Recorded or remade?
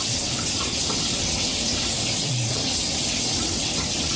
remade